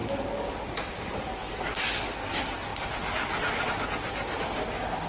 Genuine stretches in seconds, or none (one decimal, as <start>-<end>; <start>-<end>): 0.0-5.1